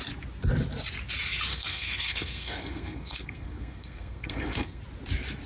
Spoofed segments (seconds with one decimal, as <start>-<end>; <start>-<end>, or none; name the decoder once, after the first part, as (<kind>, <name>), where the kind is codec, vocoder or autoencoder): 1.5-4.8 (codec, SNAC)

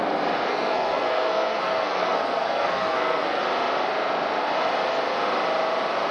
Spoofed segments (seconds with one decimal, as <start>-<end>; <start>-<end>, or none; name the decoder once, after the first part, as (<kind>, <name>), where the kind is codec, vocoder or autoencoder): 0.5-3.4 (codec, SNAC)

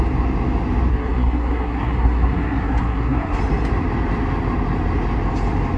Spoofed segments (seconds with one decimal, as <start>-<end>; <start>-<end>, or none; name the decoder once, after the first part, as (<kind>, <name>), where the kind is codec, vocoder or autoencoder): 0.9-3.4 (codec, SNAC)

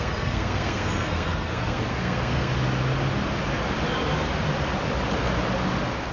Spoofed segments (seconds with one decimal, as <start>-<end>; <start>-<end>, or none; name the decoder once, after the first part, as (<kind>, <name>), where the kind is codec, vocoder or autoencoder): 0.0-2.5 (codec, SNAC)